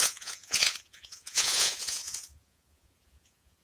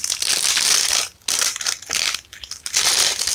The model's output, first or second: first